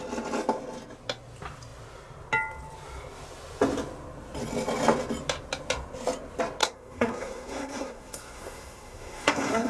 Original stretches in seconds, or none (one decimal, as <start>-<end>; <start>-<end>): 0.0-6.6